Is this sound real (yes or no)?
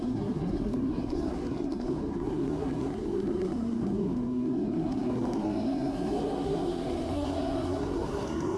no